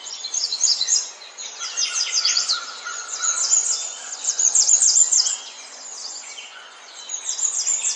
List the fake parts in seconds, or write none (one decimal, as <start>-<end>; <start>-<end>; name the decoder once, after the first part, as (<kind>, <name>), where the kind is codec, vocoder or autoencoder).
0.0-8.0 (vocoder, Vocos)